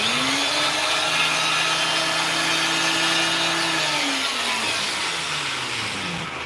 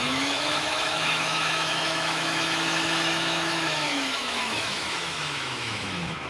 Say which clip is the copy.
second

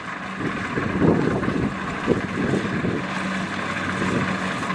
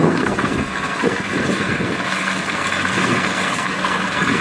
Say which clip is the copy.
second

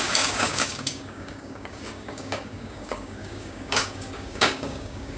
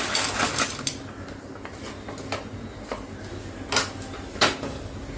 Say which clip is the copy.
first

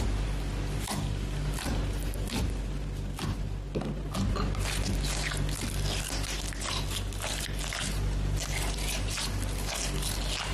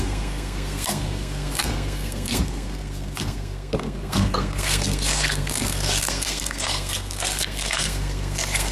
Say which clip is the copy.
second